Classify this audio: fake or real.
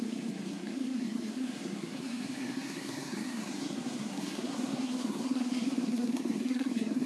fake